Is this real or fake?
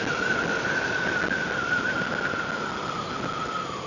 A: real